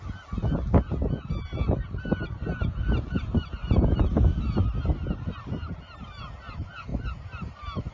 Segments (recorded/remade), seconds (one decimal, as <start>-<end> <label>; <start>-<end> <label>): 0.0-7.9 recorded